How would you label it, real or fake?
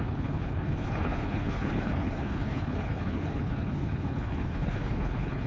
fake